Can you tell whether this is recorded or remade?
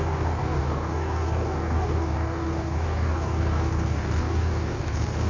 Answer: remade